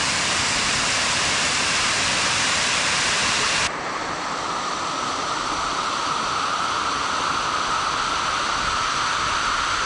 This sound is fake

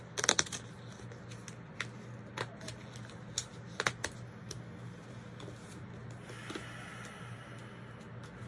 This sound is real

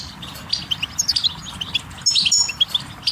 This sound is real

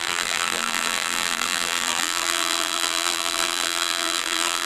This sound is fake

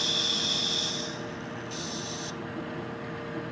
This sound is real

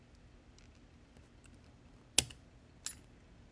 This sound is real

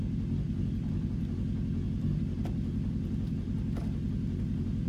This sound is real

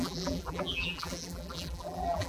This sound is fake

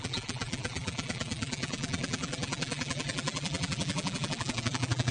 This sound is fake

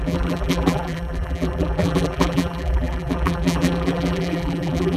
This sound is fake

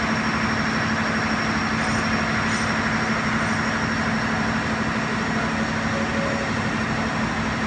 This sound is real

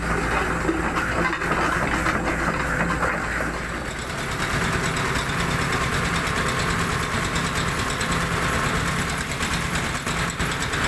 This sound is real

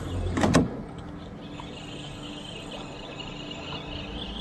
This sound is real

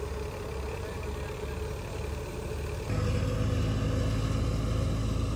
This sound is real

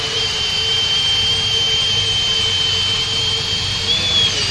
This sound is fake